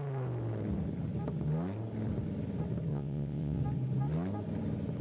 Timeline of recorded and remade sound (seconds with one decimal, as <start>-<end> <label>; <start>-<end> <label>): 0.0-2.9 recorded; 2.9-3.6 remade; 3.6-5.0 recorded